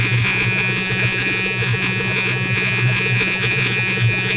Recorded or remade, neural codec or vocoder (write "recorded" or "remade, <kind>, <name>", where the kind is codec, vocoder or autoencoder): remade, vocoder, Vocos